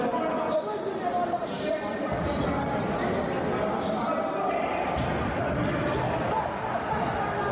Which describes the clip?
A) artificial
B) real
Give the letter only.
B